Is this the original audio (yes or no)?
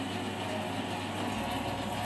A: yes